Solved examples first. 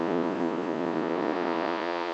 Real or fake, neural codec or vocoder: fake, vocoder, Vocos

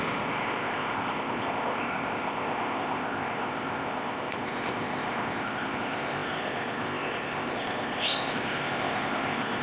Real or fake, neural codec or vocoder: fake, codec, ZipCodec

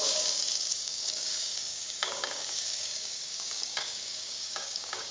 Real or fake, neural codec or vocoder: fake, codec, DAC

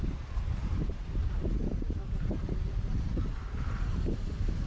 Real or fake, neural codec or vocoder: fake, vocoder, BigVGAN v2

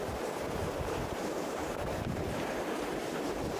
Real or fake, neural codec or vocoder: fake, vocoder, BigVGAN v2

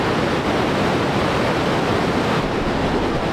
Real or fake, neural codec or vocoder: real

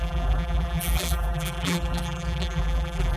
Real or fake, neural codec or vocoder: fake, vocoder, BigVGAN v2